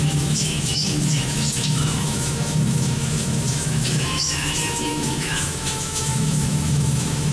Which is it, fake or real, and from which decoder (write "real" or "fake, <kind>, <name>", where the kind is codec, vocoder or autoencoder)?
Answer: fake, autoencoder, DAC-VAE